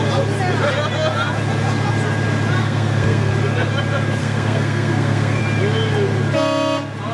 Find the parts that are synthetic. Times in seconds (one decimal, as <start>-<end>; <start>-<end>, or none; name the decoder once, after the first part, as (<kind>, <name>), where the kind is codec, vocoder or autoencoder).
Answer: 2.6-3.3 (codec, SNAC); 4.2-5.4